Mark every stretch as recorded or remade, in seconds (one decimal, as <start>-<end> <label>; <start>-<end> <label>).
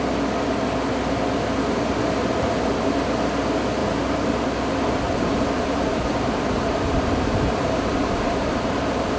0.0-3.8 recorded; 3.8-9.2 remade